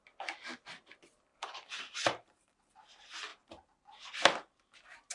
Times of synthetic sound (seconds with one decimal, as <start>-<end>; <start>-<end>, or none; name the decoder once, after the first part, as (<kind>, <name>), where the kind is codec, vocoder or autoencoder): 1.3-2.8 (vocoder, BigVGAN v2)